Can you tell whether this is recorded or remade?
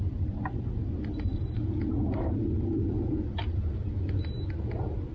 recorded